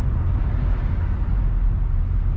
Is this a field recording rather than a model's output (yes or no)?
yes